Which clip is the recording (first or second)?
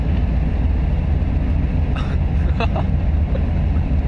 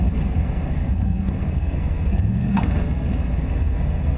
first